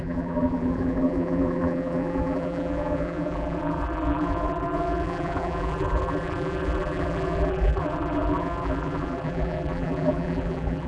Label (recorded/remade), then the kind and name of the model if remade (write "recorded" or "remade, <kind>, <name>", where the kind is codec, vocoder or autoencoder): remade, vocoder, BigVGAN v2